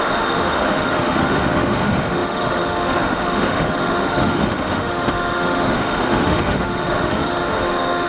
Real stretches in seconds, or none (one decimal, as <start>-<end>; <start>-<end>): none